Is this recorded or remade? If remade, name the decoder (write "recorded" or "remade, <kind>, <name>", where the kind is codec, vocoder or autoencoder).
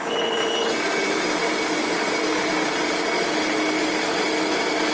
recorded